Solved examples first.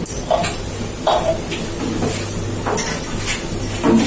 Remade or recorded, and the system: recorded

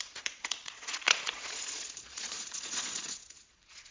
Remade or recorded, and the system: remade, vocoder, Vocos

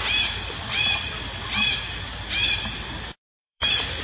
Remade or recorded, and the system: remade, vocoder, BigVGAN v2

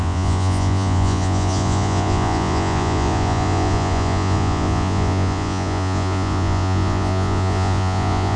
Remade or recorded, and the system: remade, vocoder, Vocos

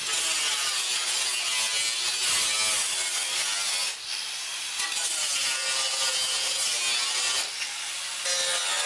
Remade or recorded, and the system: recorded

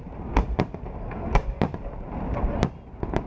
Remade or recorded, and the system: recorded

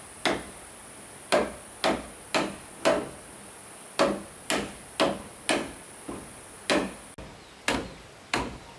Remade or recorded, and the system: recorded